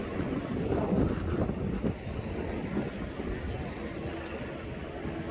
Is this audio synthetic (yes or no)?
no